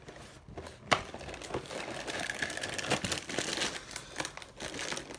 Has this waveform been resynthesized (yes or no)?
no